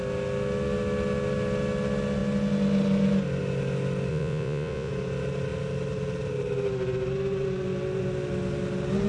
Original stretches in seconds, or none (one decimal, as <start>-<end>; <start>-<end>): 0.0-4.1; 4.9-9.1